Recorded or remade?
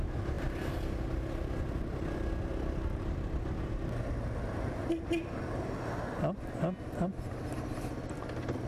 recorded